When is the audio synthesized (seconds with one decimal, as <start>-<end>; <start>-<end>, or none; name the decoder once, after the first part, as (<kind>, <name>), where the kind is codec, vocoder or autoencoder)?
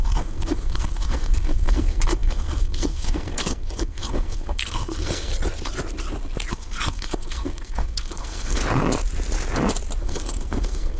0.0-5.3 (codec, SNAC); 6.5-8.6; 10.0-11.0